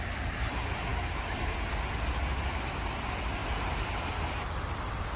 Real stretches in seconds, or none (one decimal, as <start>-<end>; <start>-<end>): 0.0-5.2